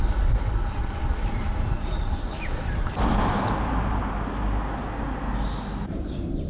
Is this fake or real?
real